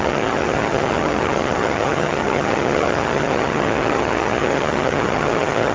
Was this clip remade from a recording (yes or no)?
yes